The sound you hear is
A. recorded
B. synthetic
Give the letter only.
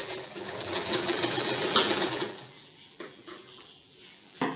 B